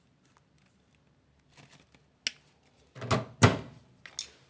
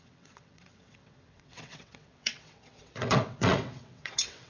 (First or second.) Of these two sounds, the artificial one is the second